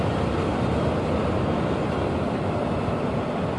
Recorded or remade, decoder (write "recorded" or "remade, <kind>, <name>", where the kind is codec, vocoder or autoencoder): recorded